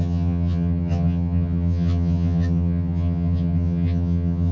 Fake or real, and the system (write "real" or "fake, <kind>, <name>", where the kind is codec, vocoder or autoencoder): fake, vocoder, HiFi-GAN